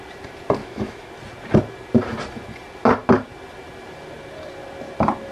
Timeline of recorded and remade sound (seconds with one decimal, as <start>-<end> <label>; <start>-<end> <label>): 0.0-0.6 recorded; 0.6-1.1 remade; 1.1-5.3 recorded